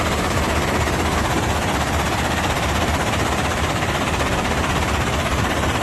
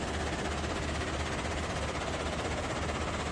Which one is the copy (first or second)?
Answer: first